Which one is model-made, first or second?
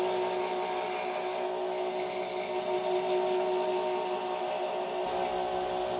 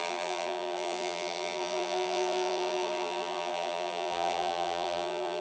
second